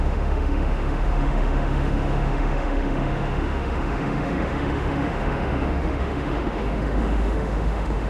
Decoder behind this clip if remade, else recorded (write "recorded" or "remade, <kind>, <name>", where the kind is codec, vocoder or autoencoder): remade, autoencoder, DAC-VAE